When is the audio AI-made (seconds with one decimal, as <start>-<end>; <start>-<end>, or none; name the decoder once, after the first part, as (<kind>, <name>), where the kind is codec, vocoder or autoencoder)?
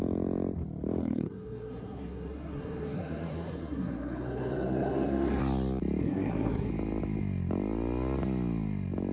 1.0-5.4 (codec, SNAC); 6.0-6.7